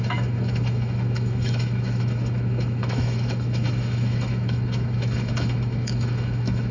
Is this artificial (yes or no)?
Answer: yes